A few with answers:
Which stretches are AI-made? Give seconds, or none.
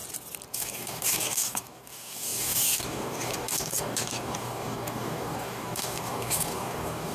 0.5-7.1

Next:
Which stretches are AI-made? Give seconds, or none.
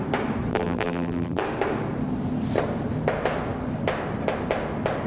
0.5-1.4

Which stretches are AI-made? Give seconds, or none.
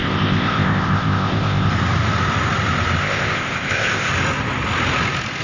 0.0-1.7; 3.0-4.1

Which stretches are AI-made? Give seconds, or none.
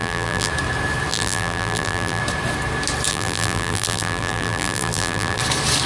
0.0-0.5; 1.1-2.2; 3.1-5.4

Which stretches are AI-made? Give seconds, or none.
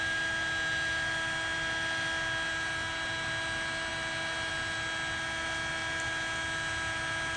none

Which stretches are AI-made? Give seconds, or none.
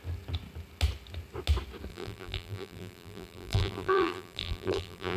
1.9-5.2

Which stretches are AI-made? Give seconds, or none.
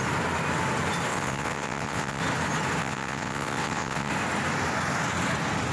1.1-2.2; 2.8-4.1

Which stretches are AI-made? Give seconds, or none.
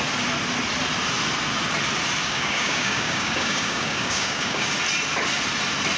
2.2-4.7